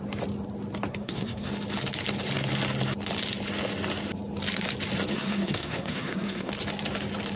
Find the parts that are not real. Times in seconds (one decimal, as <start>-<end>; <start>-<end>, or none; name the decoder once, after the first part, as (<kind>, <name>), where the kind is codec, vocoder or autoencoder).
0.9-1.5 (codec, SNAC); 5.1-6.5